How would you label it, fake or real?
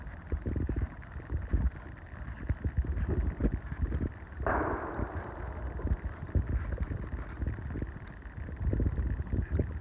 real